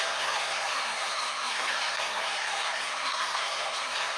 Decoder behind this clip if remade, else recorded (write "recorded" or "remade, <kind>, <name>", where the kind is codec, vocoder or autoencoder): remade, codec, SNAC